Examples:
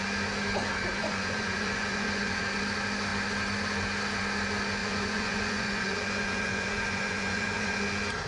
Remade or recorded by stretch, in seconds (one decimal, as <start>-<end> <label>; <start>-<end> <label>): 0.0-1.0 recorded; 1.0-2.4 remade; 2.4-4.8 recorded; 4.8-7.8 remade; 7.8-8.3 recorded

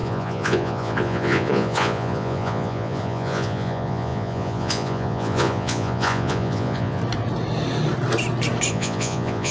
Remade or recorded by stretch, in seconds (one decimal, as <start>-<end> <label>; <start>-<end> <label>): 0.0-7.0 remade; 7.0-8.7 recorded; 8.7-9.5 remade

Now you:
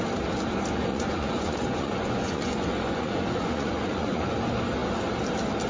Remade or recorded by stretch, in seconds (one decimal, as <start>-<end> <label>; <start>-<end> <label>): 0.0-0.9 recorded; 0.9-4.3 remade; 4.3-5.7 recorded